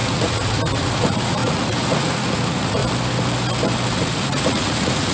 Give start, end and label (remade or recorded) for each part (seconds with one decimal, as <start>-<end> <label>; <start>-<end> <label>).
0.0-2.8 remade; 2.8-3.9 recorded; 3.9-5.1 remade